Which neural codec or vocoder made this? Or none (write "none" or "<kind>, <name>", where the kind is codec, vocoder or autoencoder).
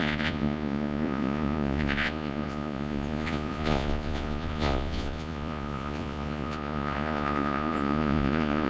vocoder, Vocos